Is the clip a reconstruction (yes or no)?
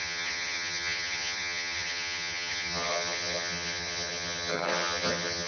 yes